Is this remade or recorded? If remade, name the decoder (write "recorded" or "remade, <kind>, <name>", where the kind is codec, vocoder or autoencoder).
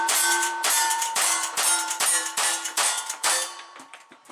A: remade, vocoder, BigVGAN v2